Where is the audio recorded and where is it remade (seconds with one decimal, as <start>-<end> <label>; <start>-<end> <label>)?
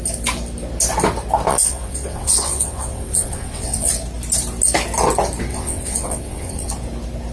0.0-1.5 recorded; 1.5-3.9 remade; 3.9-5.5 recorded; 5.5-6.7 remade; 6.7-7.3 recorded